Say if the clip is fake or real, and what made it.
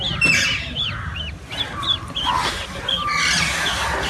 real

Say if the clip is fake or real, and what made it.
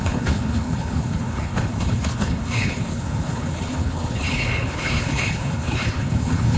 fake, codec, HILCodec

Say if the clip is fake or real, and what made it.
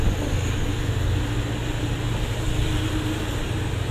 real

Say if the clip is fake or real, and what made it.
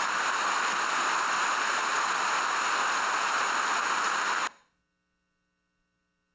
real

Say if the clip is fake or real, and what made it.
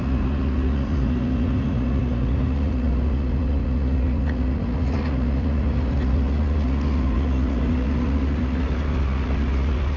fake, vocoder, Vocos